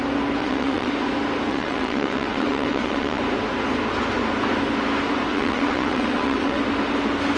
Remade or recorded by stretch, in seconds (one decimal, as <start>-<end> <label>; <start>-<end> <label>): 0.0-0.4 recorded; 0.4-0.9 remade; 0.9-1.5 recorded; 1.5-3.2 remade; 3.2-5.3 recorded; 5.3-6.6 remade; 6.6-7.4 recorded